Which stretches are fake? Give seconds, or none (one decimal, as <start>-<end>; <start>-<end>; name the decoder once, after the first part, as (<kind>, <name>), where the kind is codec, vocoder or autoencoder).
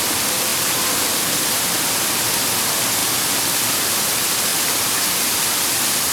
none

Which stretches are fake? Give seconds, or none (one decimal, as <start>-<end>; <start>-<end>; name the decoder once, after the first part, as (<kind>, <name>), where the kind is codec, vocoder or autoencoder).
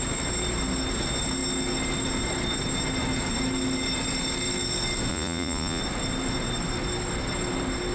5.1-5.8 (vocoder, Vocos)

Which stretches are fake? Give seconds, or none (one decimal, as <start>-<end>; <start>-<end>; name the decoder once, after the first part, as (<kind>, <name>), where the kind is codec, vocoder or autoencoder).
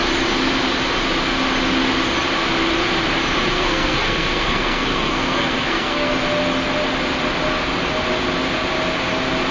3.5-6.1 (codec, SNAC)